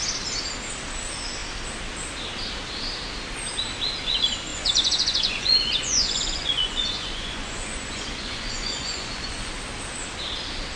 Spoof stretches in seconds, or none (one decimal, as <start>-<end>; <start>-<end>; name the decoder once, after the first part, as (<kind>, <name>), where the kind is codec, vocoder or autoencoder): 4.5-9.5 (vocoder, Vocos)